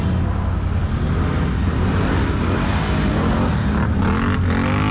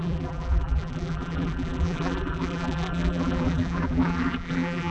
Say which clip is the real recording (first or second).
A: first